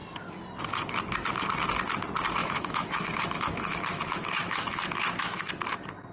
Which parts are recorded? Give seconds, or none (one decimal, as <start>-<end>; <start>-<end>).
0.0-2.4; 5.5-6.1